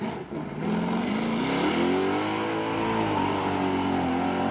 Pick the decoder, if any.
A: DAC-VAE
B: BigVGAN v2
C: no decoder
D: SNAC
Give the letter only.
C